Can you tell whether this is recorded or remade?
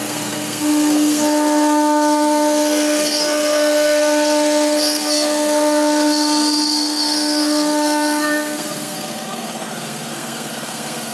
remade